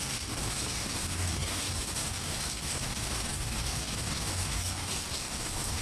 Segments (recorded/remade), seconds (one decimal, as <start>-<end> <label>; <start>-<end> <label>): 0.0-5.8 remade